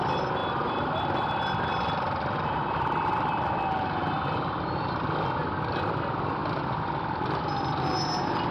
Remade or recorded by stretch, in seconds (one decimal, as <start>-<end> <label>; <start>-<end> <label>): 0.0-8.5 recorded

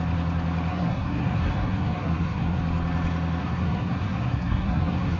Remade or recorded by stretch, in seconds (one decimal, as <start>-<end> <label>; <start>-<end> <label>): 0.0-0.7 recorded; 0.7-2.6 remade; 2.6-3.4 recorded; 3.4-5.2 remade

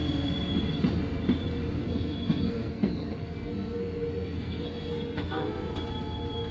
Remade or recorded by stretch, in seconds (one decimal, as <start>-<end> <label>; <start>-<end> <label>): 0.0-1.8 recorded; 1.8-5.7 remade; 5.7-6.5 recorded

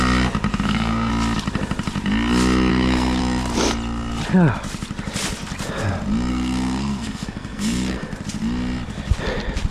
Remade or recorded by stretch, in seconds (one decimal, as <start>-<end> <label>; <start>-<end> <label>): 0.0-0.5 recorded; 0.5-1.1 remade; 1.1-2.7 recorded; 2.7-3.2 remade; 3.2-6.3 recorded; 6.3-8.1 remade; 8.1-9.7 recorded